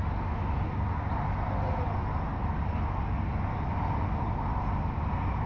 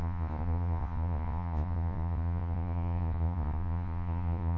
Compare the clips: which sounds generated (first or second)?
second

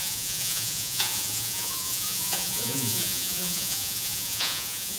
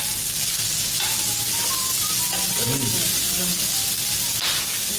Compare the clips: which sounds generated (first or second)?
first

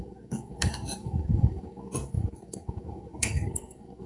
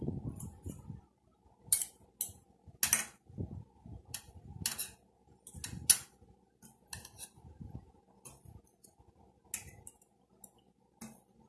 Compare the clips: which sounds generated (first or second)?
first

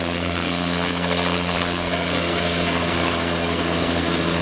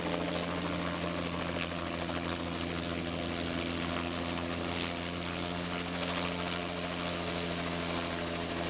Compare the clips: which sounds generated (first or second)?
first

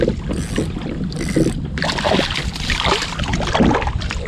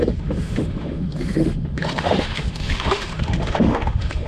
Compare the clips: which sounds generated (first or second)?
second